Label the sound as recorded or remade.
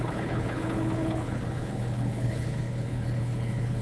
remade